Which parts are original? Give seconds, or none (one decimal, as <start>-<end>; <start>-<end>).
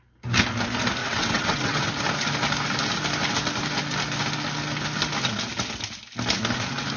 0.0-1.0; 1.8-7.0